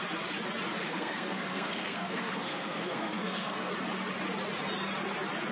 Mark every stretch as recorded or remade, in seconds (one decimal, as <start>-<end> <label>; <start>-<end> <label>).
0.0-0.8 recorded; 0.8-3.7 remade; 3.7-5.5 recorded